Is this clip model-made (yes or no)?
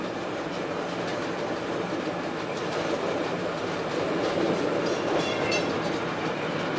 yes